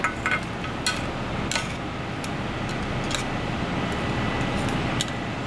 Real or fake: real